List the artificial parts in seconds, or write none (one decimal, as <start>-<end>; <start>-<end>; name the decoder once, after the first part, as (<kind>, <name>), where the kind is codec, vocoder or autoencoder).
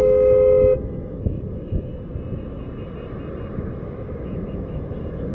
0.0-1.9 (autoencoder, DAC-VAE); 3.5-5.3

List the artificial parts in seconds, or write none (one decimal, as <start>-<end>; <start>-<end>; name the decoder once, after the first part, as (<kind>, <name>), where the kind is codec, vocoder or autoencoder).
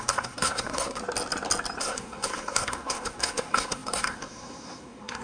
0.0-1.0 (codec, SNAC); 1.8-5.2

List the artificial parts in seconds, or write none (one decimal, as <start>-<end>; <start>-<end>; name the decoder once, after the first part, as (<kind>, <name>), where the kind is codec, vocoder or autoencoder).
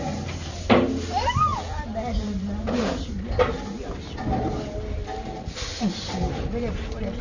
0.0-1.5 (vocoder, BigVGAN v2); 5.8-7.2